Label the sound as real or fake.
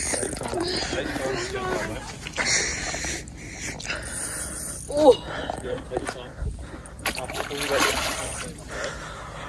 real